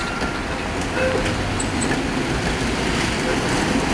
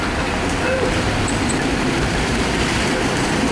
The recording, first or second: first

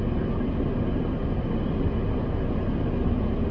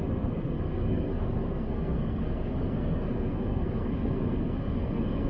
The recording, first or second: first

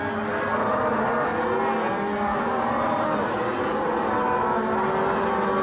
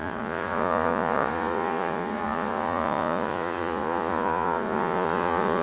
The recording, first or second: first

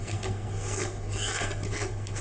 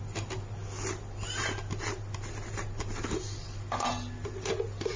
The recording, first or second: second